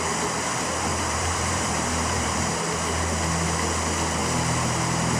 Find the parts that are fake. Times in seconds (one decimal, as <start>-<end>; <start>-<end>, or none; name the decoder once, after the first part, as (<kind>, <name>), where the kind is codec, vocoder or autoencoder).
0.9-2.5 (vocoder, BigVGAN v2)